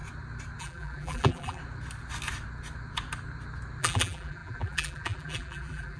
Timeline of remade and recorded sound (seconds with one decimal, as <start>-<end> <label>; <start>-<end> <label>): 0.0-0.6 recorded; 0.6-1.6 remade; 1.6-3.8 recorded; 3.8-6.0 remade